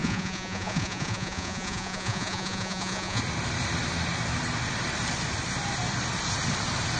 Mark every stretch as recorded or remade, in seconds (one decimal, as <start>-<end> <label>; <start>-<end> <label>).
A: 0.0-3.2 remade; 3.2-7.0 recorded